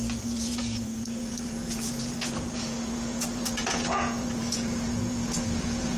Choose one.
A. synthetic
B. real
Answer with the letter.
A